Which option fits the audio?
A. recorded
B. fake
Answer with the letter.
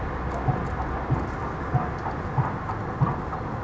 A